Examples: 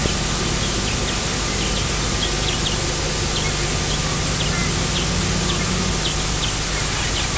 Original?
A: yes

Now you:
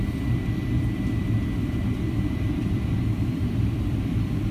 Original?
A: no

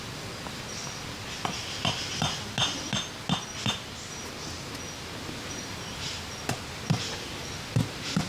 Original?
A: yes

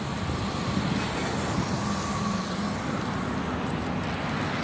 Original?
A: yes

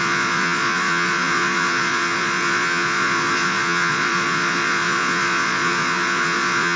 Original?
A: no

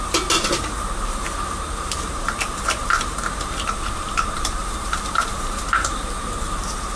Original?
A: no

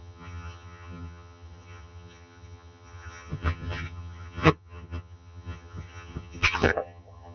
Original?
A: no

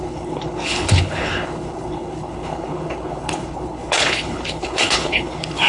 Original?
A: no